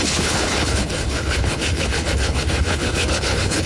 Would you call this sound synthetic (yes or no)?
yes